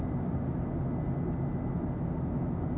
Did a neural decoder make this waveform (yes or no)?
no